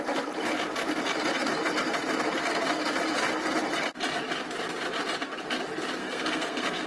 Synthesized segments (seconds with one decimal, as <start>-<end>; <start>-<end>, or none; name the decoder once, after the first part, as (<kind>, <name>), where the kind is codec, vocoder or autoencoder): 6.0-6.9 (codec, SNAC)